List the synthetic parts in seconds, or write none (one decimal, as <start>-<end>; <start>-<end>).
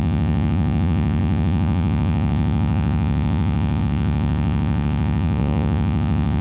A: 0.0-6.4